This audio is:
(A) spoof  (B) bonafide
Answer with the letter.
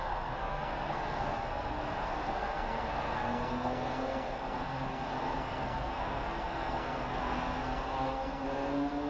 A